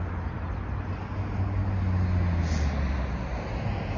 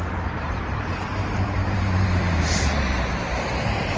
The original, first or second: first